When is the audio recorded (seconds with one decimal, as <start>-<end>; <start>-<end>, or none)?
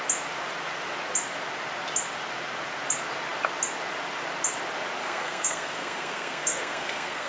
0.0-5.0